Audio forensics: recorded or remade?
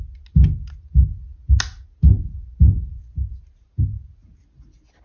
recorded